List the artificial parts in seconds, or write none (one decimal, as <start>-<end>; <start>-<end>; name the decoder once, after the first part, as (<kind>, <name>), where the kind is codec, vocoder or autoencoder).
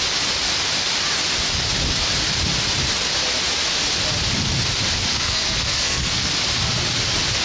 5.1-6.3 (codec, SNAC)